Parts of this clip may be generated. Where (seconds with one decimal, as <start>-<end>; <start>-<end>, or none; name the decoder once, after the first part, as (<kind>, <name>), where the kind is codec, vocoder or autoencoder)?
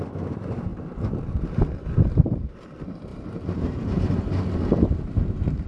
0.0-0.7 (vocoder, BigVGAN v2); 1.3-5.7